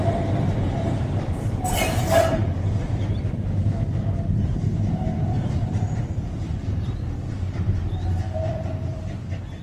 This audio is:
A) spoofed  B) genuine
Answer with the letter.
A